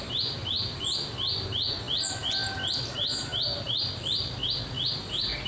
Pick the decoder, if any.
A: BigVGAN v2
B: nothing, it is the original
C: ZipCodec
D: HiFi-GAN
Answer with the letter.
B